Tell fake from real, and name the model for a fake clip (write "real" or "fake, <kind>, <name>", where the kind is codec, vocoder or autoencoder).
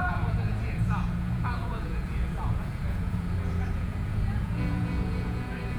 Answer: fake, vocoder, Vocos